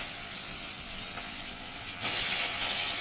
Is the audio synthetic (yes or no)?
yes